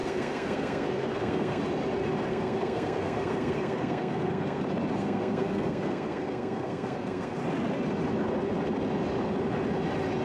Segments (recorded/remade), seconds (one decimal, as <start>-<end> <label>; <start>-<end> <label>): 0.0-1.6 remade; 1.6-2.3 recorded; 2.3-4.6 remade; 4.6-5.0 recorded; 5.0-7.4 remade; 7.4-10.2 recorded